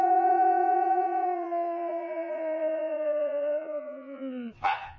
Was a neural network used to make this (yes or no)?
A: yes